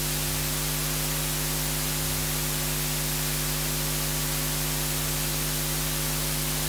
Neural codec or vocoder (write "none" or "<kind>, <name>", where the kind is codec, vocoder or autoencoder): none